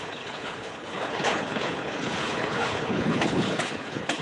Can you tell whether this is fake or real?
fake